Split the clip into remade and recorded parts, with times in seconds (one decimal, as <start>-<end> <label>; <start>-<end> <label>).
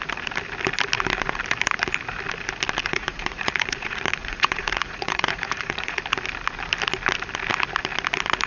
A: 0.0-2.8 recorded; 2.8-6.0 remade; 6.0-8.5 recorded